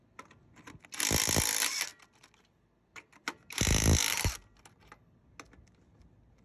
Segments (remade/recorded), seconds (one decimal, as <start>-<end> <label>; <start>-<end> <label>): 0.0-6.4 recorded